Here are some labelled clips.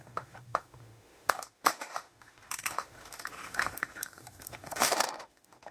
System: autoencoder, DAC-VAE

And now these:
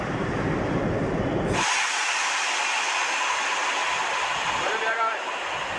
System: none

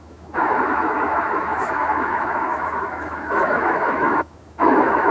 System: autoencoder, DAC-VAE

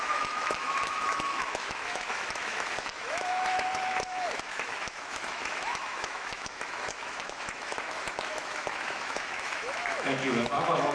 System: autoencoder, DAC-VAE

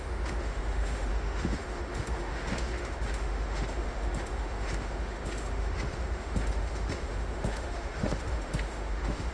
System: autoencoder, DAC-VAE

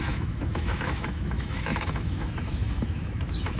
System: autoencoder, DAC-VAE